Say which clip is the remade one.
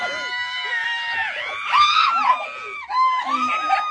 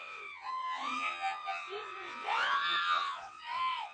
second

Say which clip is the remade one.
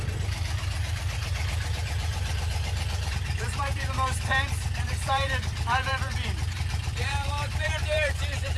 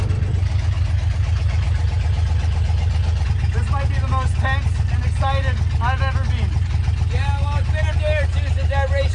first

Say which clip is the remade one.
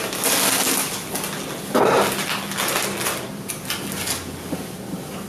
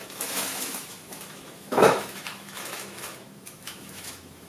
second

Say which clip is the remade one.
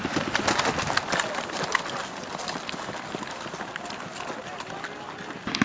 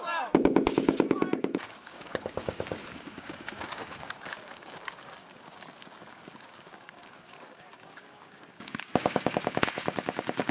second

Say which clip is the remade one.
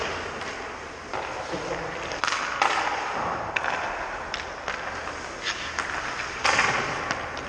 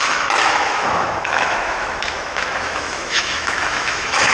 second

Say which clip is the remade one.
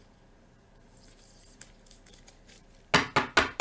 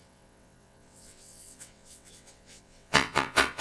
second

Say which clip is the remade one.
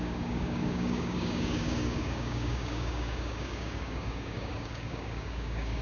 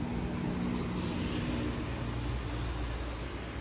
first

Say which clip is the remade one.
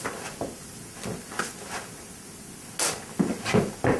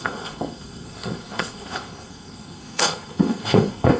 second